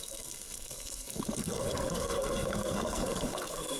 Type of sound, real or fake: fake